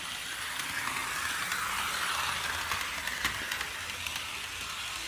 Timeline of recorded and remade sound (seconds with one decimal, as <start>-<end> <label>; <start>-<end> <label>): 0.0-5.1 recorded